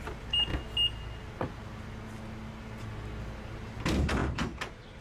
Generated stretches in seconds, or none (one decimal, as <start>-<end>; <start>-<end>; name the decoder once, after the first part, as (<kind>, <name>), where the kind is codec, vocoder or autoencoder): 0.0-0.5 (vocoder, BigVGAN v2); 3.5-5.0